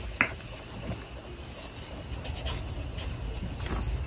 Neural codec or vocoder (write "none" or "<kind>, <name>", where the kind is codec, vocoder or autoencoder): none